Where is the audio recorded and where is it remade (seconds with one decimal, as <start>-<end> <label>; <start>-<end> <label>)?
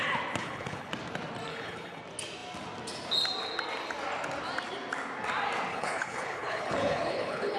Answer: 0.0-0.4 recorded; 0.4-0.9 remade; 0.9-1.5 recorded; 1.5-2.0 remade; 2.0-5.7 recorded; 5.7-7.6 remade